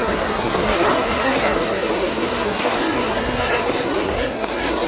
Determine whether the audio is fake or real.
fake